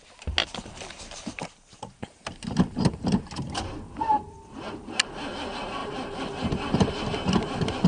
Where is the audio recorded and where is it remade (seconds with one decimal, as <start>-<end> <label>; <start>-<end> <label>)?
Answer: 0.0-0.4 recorded; 0.4-4.7 remade; 4.7-5.8 recorded; 5.8-7.9 remade